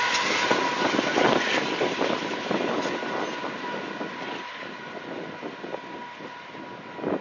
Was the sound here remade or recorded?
recorded